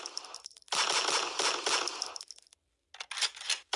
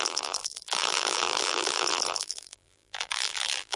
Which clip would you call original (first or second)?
first